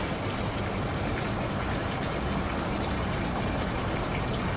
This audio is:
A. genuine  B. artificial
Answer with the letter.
A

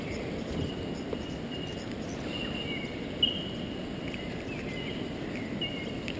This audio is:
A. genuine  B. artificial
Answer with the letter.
A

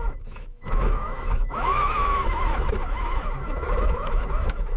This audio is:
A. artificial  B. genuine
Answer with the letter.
A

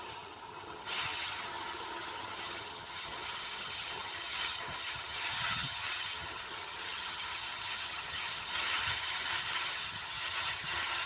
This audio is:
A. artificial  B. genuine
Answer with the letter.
A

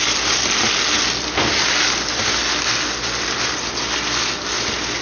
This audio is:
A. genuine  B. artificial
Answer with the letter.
A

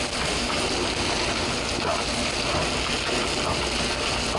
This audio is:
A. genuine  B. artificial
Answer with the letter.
A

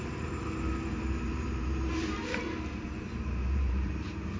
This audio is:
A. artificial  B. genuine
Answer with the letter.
A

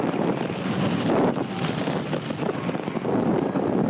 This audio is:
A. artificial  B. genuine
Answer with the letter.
B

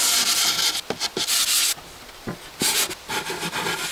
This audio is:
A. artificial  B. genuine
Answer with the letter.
B